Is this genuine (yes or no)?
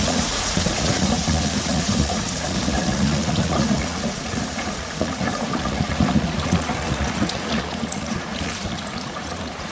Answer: no